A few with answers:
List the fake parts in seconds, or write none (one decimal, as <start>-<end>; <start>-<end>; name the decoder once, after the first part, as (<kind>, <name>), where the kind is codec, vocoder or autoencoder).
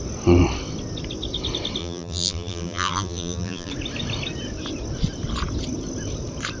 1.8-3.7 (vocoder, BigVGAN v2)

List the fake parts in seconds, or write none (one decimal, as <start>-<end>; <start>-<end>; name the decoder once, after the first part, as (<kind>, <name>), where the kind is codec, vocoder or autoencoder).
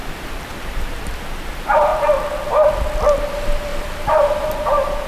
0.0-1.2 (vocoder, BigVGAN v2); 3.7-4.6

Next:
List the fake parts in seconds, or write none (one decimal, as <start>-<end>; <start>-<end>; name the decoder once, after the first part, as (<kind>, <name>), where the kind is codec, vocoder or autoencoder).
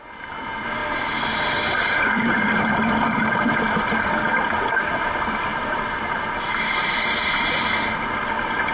0.0-8.7 (vocoder, BigVGAN v2)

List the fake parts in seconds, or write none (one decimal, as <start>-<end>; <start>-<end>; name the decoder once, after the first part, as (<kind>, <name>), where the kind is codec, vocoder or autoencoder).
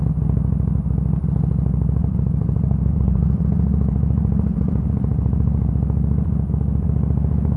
2.0-5.7 (vocoder, BigVGAN v2)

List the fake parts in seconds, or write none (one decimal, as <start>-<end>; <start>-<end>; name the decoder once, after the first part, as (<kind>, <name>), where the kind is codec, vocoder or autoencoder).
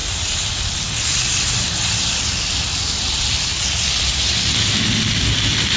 0.0-3.5 (vocoder, BigVGAN v2); 4.1-5.8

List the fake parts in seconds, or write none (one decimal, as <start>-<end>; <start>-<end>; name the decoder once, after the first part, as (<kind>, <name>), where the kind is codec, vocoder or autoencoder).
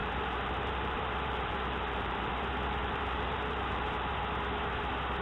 0.0-2.3 (vocoder, BigVGAN v2); 2.8-4.1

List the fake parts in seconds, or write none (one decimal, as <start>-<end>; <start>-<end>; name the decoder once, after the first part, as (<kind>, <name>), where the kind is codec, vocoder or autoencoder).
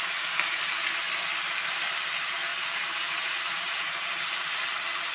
2.5-3.9 (vocoder, BigVGAN v2)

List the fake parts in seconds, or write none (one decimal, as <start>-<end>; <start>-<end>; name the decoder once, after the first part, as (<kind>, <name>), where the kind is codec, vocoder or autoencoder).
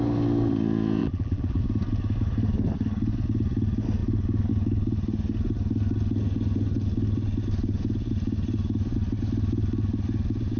1.0-1.6 (vocoder, BigVGAN v2)